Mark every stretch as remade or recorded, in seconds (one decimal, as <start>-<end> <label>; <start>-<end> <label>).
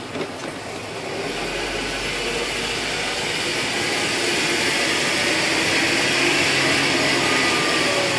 0.0-8.2 recorded